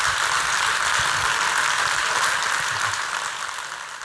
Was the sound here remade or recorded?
recorded